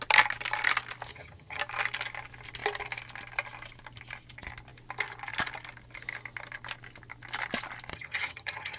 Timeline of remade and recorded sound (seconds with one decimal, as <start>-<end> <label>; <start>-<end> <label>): 0.0-1.1 recorded; 1.1-1.6 remade; 1.6-7.9 recorded; 7.9-8.8 remade